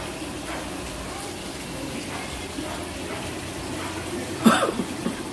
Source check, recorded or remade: recorded